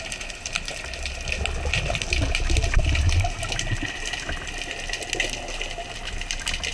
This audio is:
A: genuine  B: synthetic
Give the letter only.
A